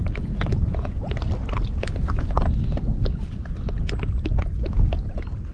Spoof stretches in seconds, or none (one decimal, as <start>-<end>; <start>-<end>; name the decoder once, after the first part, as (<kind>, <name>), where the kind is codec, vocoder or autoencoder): 0.5-1.1 (vocoder, Vocos)